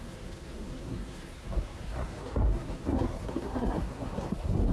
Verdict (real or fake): fake